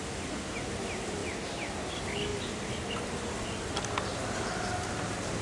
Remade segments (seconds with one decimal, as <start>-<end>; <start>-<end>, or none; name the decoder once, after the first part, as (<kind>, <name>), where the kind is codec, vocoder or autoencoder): none